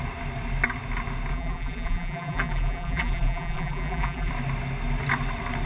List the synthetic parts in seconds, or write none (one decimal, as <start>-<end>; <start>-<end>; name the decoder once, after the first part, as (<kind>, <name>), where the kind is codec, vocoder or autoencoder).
1.3-4.3 (vocoder, BigVGAN v2)